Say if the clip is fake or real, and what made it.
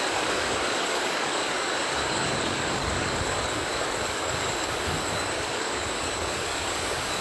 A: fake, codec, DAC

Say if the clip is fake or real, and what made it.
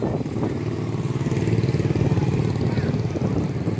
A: real